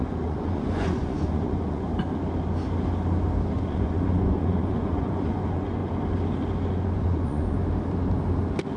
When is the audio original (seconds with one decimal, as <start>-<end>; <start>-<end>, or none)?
1.9-3.5; 5.8-6.7; 7.6-8.8